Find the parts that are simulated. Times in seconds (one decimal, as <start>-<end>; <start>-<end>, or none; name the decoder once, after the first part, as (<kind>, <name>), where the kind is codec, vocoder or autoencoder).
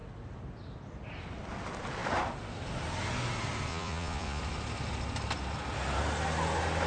3.7-4.4 (vocoder, Vocos)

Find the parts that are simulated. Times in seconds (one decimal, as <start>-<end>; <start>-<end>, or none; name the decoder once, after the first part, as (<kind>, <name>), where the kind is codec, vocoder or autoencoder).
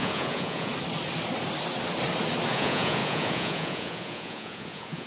0.0-0.7 (vocoder, Vocos); 2.5-5.1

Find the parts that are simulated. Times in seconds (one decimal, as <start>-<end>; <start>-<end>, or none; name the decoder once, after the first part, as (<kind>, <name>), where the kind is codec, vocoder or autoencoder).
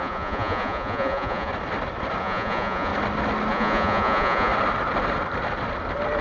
0.0-1.5 (vocoder, Vocos); 2.2-2.9; 3.5-4.5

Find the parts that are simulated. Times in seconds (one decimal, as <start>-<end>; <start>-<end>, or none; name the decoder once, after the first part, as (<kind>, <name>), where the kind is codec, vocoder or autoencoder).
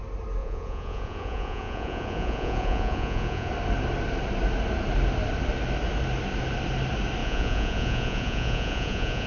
0.4-3.5 (vocoder, Vocos); 7.2-9.3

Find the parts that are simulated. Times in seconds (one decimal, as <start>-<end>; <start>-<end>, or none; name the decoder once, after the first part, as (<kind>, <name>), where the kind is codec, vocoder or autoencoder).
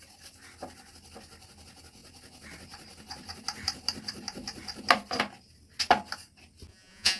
6.7-7.2 (vocoder, Vocos)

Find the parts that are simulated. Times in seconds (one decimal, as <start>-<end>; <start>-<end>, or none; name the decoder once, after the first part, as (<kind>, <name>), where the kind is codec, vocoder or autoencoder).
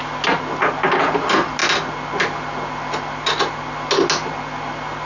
none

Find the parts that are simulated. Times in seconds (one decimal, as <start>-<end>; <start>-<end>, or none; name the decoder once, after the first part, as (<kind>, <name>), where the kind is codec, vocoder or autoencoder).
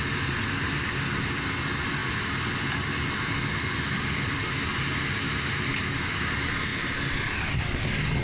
none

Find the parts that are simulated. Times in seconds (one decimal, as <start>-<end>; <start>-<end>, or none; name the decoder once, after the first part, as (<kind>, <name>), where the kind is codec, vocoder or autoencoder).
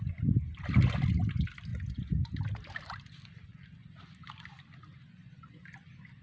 none